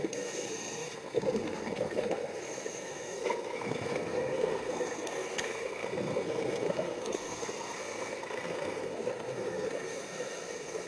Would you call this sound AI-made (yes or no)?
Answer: yes